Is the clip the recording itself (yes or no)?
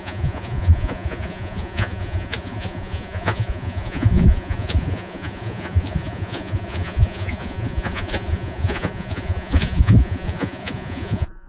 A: no